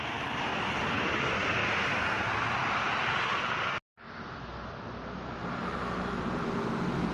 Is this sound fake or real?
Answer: real